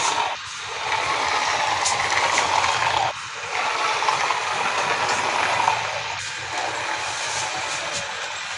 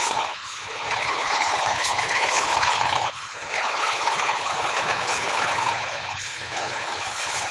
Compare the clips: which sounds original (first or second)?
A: first